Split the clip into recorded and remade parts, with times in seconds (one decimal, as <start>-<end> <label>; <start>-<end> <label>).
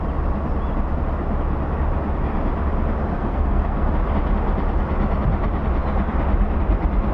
0.0-3.1 recorded; 3.1-3.9 remade; 3.9-7.1 recorded